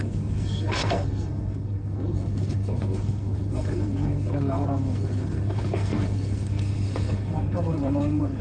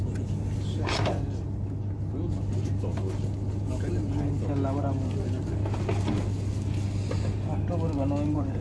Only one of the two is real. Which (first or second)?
second